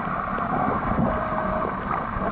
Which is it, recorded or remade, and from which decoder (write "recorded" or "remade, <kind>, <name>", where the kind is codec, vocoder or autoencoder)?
recorded